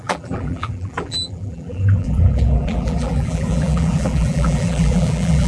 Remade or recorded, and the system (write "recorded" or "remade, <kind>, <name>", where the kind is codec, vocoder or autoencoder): remade, vocoder, BigVGAN v2